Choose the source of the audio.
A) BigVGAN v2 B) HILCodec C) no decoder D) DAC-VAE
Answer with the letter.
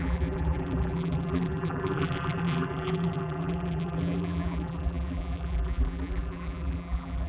A